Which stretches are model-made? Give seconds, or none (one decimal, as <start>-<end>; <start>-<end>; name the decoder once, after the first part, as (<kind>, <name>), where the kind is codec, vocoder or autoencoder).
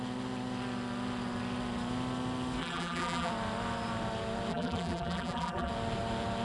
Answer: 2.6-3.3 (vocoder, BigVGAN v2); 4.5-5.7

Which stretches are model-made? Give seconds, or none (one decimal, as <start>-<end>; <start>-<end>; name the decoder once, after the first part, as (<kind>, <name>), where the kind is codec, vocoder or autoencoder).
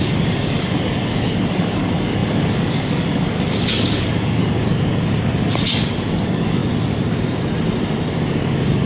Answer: 0.0-6.6 (codec, DAC); 8.2-8.9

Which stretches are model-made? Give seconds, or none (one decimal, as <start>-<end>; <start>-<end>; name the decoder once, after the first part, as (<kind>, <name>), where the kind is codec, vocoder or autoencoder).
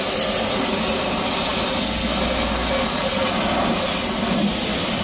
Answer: none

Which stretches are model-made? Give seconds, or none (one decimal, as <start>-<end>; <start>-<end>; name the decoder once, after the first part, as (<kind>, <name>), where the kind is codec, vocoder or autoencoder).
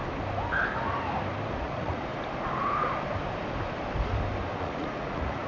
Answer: 1.5-2.1 (vocoder, Vocos); 4.6-5.5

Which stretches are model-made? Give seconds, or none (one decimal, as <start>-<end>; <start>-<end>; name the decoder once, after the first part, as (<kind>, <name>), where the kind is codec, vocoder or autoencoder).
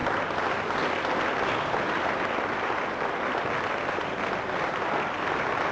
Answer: none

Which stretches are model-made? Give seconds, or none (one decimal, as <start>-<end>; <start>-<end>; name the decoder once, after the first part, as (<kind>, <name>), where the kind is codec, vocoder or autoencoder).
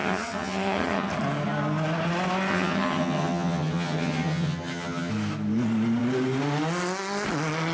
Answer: 0.0-1.1 (vocoder, HiFi-GAN); 2.5-5.1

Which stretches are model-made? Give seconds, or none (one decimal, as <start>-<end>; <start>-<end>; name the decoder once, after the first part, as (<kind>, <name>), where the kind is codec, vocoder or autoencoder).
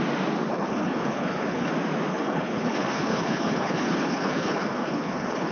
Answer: 0.5-1.7 (codec, HILCodec); 2.1-5.5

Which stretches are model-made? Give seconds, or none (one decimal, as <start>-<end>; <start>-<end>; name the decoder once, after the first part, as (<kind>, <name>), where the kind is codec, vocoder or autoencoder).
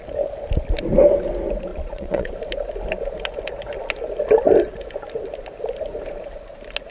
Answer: 1.7-2.3 (vocoder, Vocos)